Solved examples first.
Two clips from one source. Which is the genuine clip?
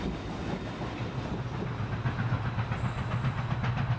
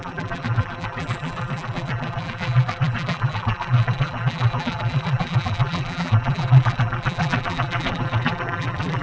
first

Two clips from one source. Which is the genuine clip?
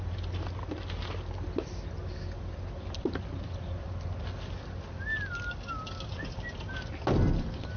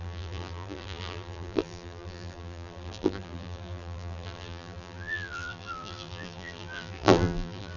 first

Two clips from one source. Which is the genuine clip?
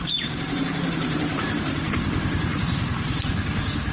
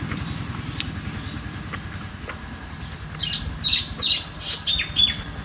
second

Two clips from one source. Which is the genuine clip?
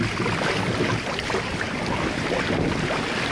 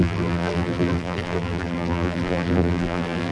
first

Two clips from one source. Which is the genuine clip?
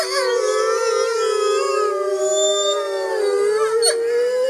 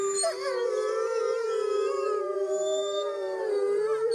first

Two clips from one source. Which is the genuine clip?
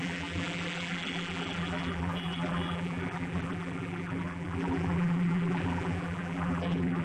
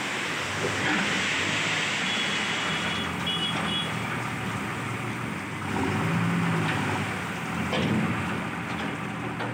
second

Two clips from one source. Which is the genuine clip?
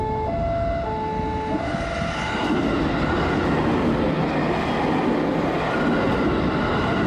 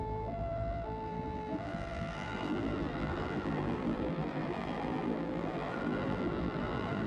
first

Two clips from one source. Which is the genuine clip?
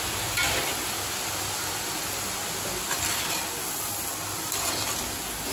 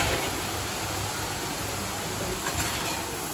first